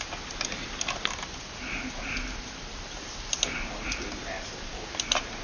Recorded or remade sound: recorded